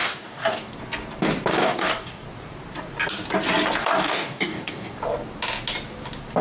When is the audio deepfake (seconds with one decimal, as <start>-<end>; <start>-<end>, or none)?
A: 0.0-0.7; 1.5-2.2; 3.8-5.0